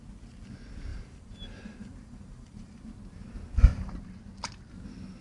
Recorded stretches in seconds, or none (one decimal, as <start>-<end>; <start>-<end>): 0.0-0.9; 2.8-5.2